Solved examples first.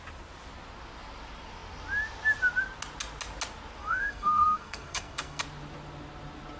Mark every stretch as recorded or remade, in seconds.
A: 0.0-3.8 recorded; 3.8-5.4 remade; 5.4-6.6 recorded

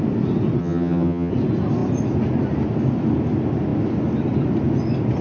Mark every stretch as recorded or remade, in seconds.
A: 0.0-0.6 recorded; 0.6-1.3 remade; 1.3-5.2 recorded